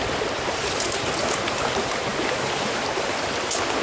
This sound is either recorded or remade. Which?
recorded